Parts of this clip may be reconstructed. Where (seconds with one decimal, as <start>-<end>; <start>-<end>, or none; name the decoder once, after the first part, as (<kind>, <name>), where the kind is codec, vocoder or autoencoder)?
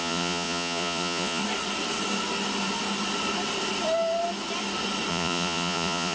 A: 0.0-1.4 (vocoder, Vocos); 5.1-6.1